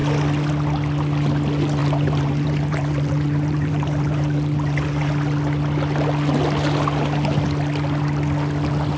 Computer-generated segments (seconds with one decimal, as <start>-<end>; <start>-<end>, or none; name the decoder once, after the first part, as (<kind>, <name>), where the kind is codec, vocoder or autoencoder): 1.8-5.1 (vocoder, BigVGAN v2)